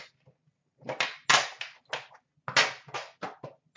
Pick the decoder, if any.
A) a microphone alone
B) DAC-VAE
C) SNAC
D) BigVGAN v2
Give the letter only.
A